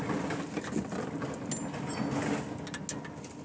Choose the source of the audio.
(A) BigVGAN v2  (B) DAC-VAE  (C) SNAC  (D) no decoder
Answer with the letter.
D